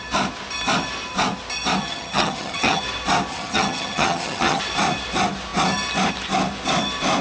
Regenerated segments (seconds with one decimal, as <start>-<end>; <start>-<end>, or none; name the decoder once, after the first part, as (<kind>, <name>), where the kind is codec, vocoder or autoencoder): 1.8-2.8 (vocoder, HiFi-GAN); 3.3-4.6